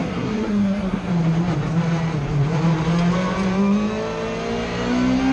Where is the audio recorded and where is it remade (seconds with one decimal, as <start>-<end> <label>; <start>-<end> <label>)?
0.0-1.1 remade; 1.1-5.3 recorded